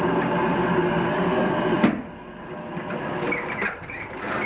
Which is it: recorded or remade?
recorded